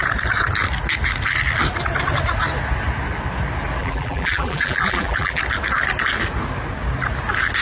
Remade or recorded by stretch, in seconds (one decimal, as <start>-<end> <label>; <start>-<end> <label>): 0.0-3.8 recorded; 3.8-5.4 remade; 5.4-7.6 recorded